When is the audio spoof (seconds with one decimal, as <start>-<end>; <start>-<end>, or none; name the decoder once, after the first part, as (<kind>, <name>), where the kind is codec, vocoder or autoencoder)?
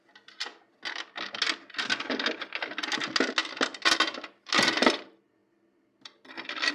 5.4-6.7 (vocoder, BigVGAN v2)